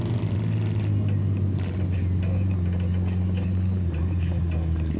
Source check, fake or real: real